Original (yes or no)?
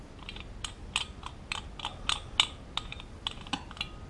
yes